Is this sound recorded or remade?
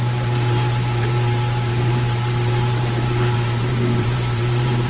remade